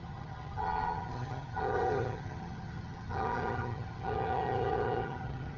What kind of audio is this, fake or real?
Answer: fake